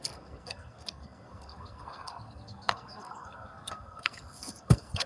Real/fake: fake